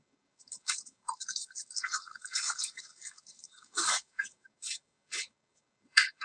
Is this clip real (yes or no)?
no